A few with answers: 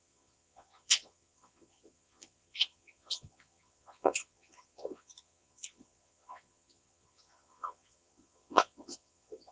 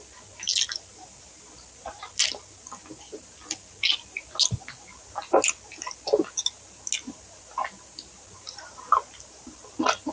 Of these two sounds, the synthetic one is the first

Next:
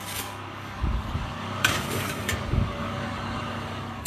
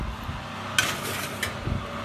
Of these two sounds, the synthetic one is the first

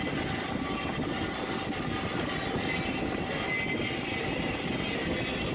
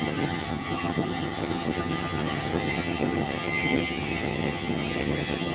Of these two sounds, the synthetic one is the second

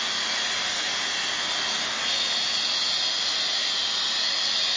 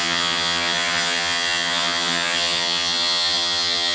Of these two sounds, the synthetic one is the second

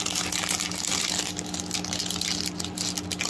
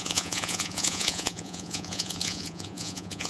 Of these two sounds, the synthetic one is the second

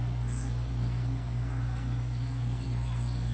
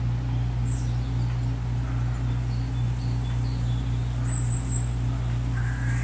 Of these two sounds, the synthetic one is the first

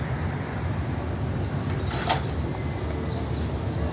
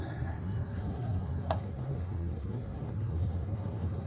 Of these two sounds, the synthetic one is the second